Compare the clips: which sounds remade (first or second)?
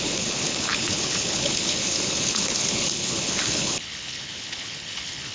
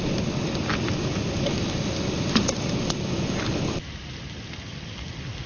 first